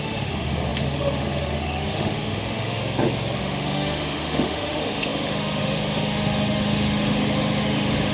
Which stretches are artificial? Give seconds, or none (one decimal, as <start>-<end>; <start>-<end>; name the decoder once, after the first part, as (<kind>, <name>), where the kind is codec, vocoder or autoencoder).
0.0-2.8 (autoencoder, DAC-VAE); 3.4-8.1